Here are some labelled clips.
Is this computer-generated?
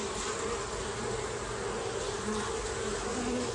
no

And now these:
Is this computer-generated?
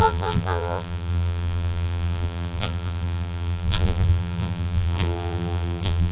yes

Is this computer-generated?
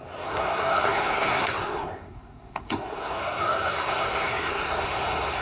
yes